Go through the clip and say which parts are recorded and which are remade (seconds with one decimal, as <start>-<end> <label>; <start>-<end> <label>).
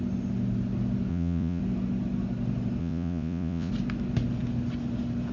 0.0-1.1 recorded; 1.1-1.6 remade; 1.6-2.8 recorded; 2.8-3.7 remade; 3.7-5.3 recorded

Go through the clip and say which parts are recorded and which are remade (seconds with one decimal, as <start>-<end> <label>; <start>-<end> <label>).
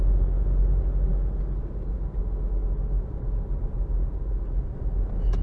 0.0-5.4 recorded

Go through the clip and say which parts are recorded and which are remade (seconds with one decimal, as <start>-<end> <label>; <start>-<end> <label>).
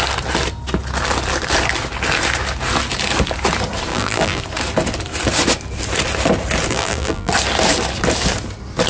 0.0-3.9 recorded; 3.9-4.4 remade; 4.4-6.7 recorded; 6.7-7.3 remade; 7.3-8.9 recorded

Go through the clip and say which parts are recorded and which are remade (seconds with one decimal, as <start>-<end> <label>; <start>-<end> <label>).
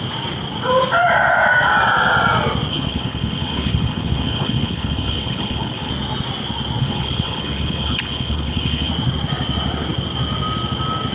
0.0-2.7 recorded; 2.7-5.9 remade; 5.9-6.8 recorded; 6.8-8.9 remade; 8.9-11.1 recorded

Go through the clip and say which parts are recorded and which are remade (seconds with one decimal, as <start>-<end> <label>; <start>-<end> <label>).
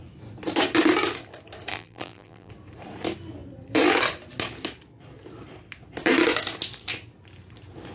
0.0-1.7 recorded; 1.7-2.5 remade; 2.5-7.9 recorded